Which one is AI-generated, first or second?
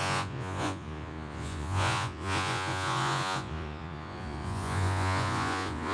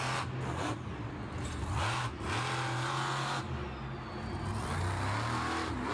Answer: first